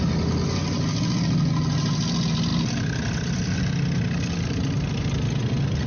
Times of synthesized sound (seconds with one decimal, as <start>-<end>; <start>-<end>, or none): none